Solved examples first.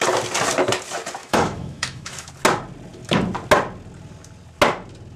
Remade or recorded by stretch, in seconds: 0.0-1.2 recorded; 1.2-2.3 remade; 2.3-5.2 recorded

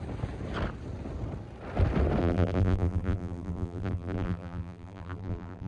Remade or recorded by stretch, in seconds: 0.0-2.2 recorded; 2.2-5.7 remade

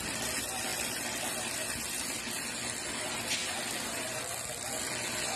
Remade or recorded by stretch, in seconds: 0.0-5.4 recorded

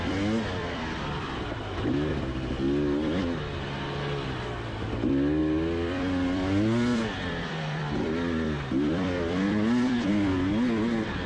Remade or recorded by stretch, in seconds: 0.0-0.6 recorded; 0.6-1.6 remade; 1.6-5.4 recorded; 5.4-10.1 remade; 10.1-11.3 recorded

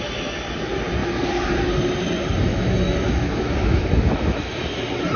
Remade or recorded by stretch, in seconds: 0.0-2.5 recorded; 2.5-4.8 remade; 4.8-5.2 recorded

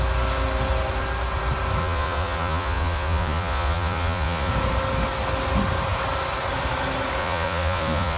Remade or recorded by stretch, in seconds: 0.0-1.8 recorded; 1.8-4.5 remade; 4.5-7.2 recorded; 7.2-8.2 remade

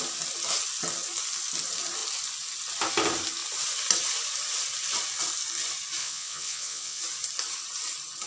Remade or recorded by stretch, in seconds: 0.0-6.0 recorded; 6.0-7.0 remade; 7.0-8.3 recorded

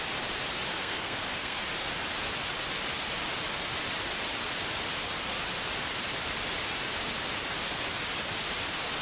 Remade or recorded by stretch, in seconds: 0.0-0.7 recorded; 0.7-1.6 remade; 1.6-9.0 recorded